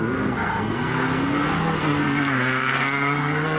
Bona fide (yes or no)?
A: no